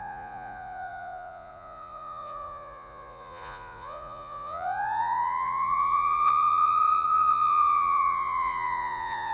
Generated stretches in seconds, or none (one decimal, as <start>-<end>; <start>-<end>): 0.0-9.3